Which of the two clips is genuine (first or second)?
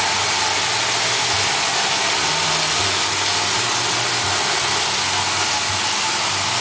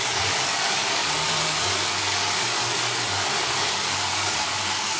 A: first